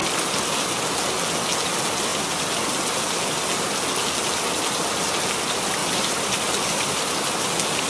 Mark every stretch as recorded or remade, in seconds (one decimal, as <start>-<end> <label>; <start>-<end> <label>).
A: 0.0-2.1 recorded; 2.1-3.0 remade; 3.0-5.8 recorded; 5.8-7.0 remade; 7.0-7.9 recorded